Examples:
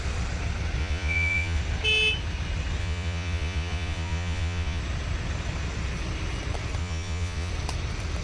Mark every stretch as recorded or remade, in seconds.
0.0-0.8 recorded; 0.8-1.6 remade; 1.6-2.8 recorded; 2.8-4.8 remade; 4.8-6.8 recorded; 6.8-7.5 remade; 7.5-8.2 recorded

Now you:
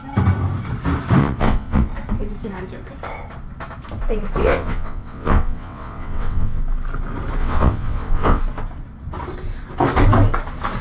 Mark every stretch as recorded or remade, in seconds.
0.0-1.2 recorded; 1.2-1.9 remade; 1.9-4.4 recorded; 4.4-6.6 remade; 6.6-7.4 recorded; 7.4-8.4 remade; 8.4-10.8 recorded